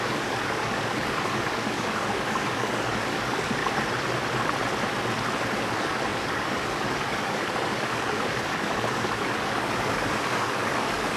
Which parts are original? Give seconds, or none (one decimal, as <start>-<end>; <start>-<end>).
3.6-5.5